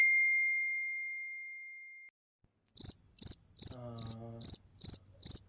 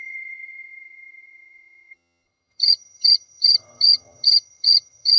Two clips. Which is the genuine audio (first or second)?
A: first